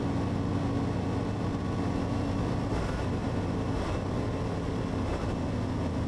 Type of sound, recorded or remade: recorded